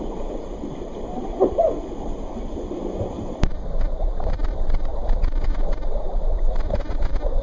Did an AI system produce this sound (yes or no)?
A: yes